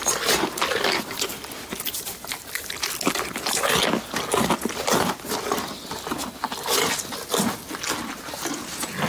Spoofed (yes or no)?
no